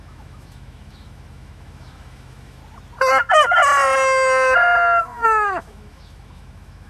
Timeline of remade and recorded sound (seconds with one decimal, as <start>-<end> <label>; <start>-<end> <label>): 0.0-2.6 remade; 2.6-5.0 recorded; 5.0-6.9 remade